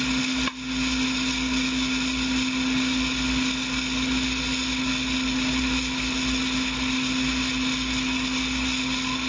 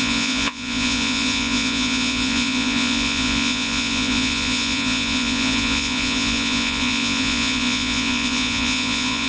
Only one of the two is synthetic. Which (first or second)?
second